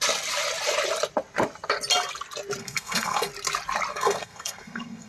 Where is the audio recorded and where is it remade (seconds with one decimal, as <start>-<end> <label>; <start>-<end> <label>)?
0.0-2.6 recorded; 2.6-3.3 remade; 3.3-3.9 recorded; 3.9-5.1 remade